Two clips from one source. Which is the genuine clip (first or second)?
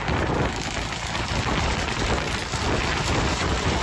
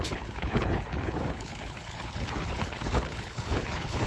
first